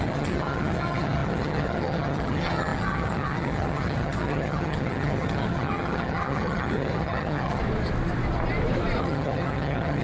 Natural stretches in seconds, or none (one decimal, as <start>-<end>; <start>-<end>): 7.6-9.0